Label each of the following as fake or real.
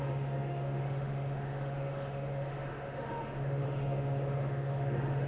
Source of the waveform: fake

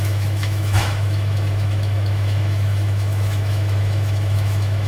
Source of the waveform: fake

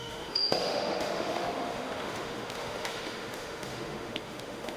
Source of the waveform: fake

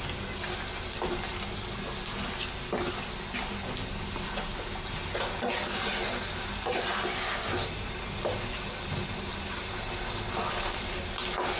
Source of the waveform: real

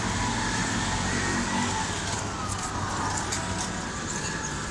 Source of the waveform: real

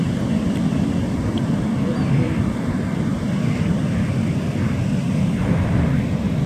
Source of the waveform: real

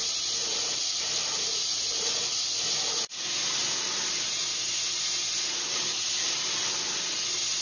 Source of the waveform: real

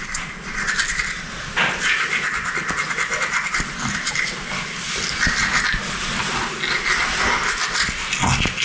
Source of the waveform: real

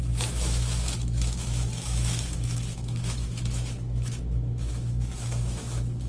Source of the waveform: fake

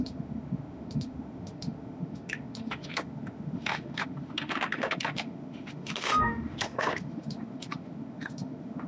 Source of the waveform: fake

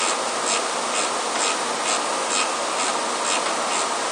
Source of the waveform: real